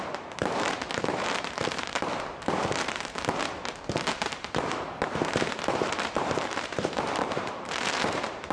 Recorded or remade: remade